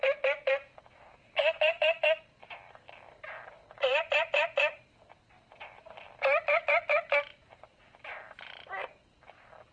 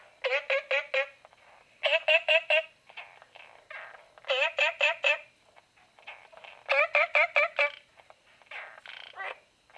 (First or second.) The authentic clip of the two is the second